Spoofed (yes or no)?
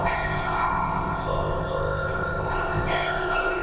yes